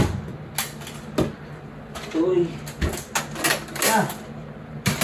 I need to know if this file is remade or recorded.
recorded